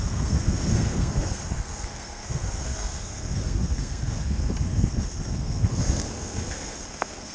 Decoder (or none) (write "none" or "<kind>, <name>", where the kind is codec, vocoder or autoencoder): codec, SNAC